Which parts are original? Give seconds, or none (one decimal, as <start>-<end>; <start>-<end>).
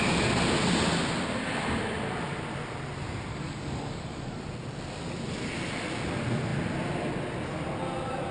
0.0-3.3; 4.4-8.3